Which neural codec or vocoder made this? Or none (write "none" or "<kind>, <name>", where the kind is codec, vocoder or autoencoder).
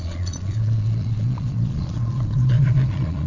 vocoder, Vocos